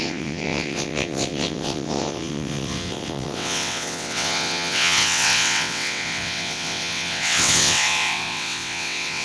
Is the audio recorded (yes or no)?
no